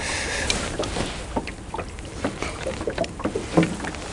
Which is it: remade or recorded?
recorded